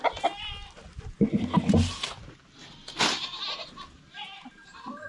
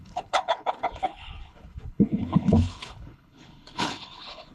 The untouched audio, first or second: first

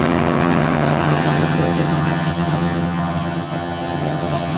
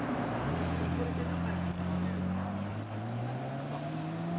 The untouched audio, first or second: second